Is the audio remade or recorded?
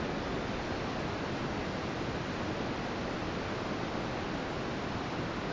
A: recorded